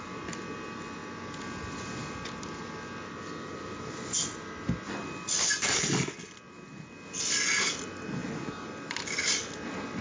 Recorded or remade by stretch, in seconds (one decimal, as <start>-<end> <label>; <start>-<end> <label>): 0.0-10.0 recorded